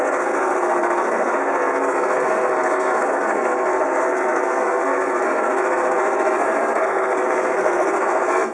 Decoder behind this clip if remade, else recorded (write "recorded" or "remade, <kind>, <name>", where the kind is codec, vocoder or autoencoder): remade, codec, SNAC